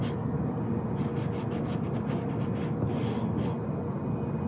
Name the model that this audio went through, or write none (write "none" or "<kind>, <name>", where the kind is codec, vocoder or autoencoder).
none